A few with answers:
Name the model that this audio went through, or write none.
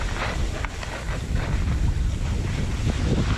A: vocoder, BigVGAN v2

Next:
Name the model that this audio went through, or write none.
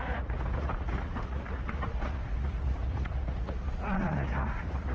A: vocoder, Vocos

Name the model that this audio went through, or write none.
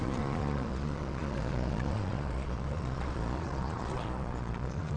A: vocoder, Vocos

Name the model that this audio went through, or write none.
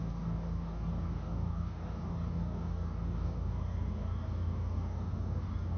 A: codec, DAC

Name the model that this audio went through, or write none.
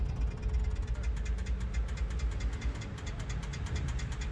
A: none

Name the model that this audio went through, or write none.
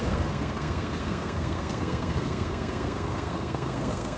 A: codec, SNAC